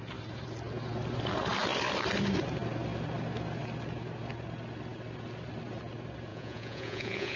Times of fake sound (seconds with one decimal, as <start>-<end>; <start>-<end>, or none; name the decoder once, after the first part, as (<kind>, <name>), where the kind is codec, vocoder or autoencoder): 6.3-7.4 (vocoder, Vocos)